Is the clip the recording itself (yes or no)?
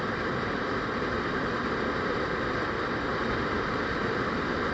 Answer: yes